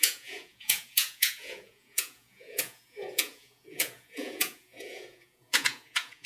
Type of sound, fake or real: fake